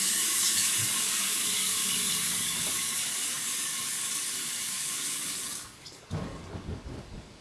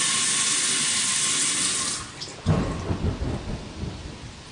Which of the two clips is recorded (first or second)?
second